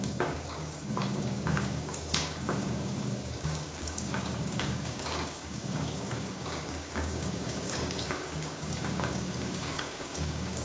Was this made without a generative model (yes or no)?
no